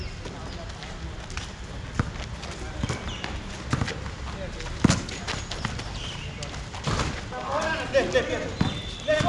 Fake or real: real